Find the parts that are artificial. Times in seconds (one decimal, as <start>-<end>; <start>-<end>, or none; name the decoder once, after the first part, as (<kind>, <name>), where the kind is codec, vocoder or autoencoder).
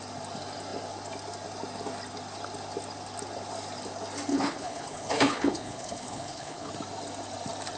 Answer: 4.3-6.7 (codec, HILCodec)